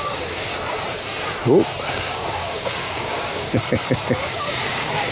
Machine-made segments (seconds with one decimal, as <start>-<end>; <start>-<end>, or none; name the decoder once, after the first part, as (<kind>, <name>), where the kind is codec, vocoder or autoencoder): 0.0-0.5 (codec, DAC); 1.9-3.6; 4.2-5.1